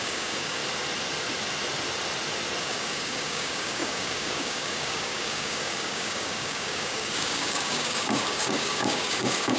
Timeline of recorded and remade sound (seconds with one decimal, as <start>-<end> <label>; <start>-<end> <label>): 0.0-0.6 remade; 0.6-2.6 recorded; 2.6-9.6 remade